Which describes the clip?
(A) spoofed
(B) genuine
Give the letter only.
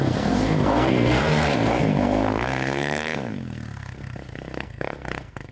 A